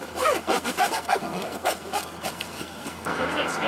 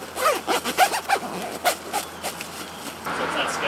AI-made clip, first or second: first